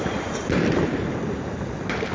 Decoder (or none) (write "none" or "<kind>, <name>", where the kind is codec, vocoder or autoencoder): none